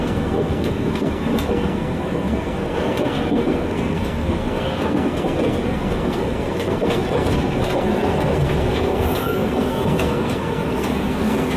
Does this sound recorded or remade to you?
remade